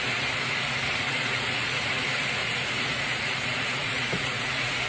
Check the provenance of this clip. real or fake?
fake